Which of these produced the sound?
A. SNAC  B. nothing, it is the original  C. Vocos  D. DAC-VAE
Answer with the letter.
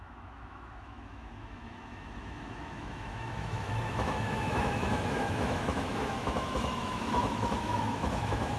D